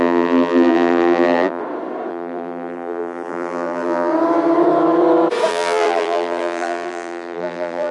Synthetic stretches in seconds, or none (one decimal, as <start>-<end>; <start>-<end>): 0.0-1.6; 2.1-4.1; 5.5-7.9